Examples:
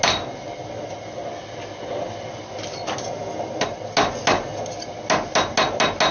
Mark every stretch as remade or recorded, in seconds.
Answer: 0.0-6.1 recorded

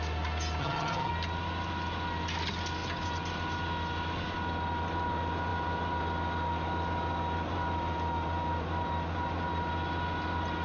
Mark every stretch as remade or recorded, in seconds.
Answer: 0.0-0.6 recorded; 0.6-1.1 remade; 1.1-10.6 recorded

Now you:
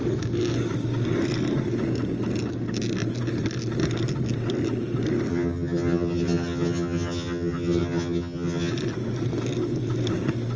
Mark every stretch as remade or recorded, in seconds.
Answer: 0.0-5.3 recorded; 5.3-8.7 remade; 8.7-10.6 recorded

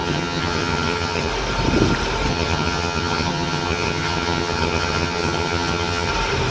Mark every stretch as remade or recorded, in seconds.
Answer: 0.0-1.3 remade; 1.3-2.3 recorded; 2.3-6.1 remade; 6.1-6.5 recorded